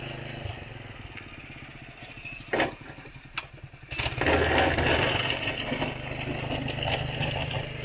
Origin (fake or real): real